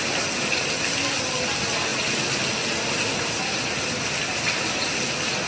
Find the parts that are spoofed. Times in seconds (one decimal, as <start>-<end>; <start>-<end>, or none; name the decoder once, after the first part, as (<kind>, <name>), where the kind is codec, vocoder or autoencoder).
none